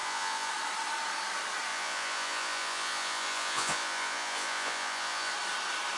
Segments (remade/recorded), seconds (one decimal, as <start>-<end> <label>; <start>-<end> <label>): 0.0-0.5 remade; 0.5-1.7 recorded; 1.7-5.3 remade; 5.3-6.0 recorded